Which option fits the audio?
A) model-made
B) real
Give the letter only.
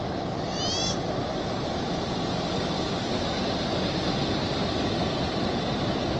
B